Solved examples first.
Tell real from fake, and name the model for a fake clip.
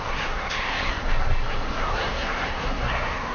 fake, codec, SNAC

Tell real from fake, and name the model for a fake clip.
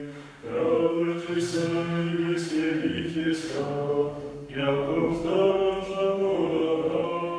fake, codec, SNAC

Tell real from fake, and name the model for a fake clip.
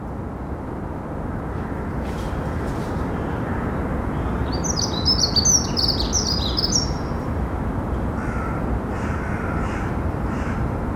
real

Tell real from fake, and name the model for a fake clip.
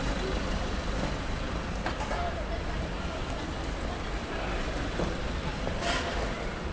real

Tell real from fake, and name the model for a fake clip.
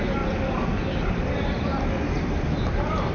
real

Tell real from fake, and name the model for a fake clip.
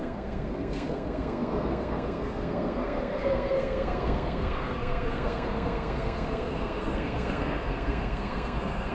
fake, codec, SNAC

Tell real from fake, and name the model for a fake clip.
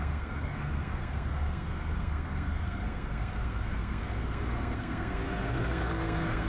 fake, codec, SNAC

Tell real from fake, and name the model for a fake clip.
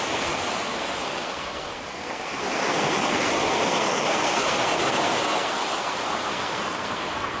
fake, codec, SNAC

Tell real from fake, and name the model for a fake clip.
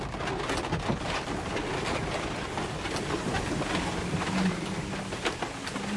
real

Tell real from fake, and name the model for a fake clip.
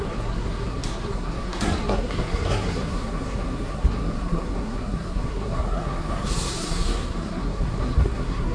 fake, codec, SNAC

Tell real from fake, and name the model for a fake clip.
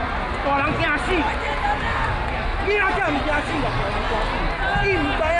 real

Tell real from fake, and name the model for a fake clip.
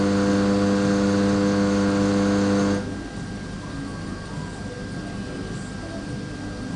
real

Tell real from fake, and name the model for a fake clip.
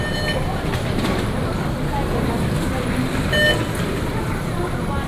real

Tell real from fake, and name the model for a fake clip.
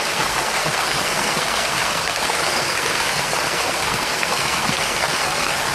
fake, codec, SNAC